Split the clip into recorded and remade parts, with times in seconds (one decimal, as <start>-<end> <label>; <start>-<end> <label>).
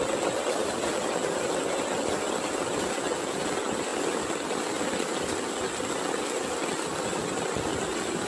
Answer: 0.0-8.3 recorded